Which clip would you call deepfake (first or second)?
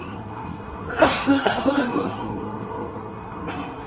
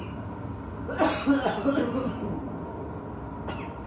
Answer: first